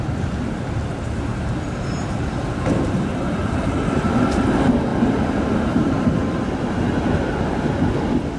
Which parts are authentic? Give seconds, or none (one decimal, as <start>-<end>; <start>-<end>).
0.0-1.3; 3.5-4.9; 6.2-8.4